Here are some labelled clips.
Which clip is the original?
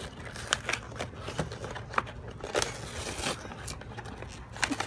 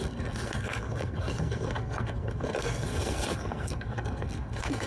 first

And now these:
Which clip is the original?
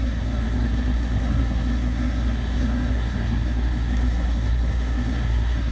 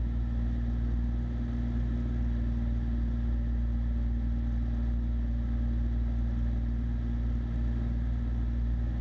second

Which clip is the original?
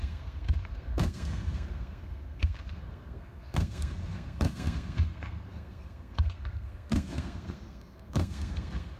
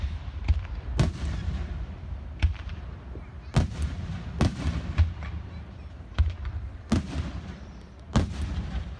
second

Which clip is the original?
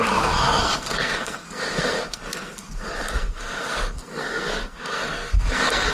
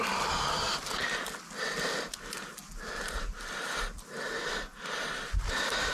second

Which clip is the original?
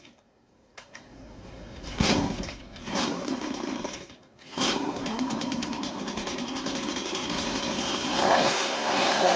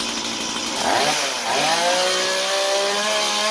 second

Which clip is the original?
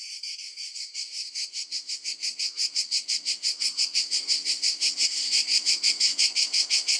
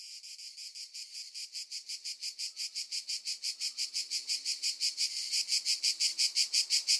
second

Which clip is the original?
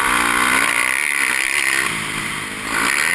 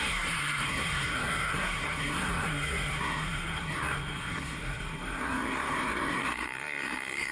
first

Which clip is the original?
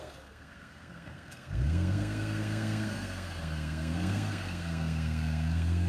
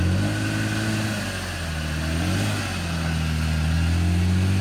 second